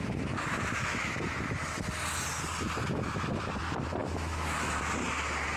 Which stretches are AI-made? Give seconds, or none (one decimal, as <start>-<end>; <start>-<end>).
2.8-3.5; 4.0-4.8